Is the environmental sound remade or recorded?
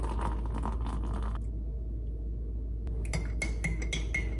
recorded